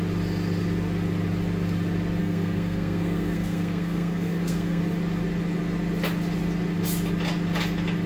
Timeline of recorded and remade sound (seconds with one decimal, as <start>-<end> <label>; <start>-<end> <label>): 0.0-2.2 recorded; 2.2-4.8 remade; 4.8-8.1 recorded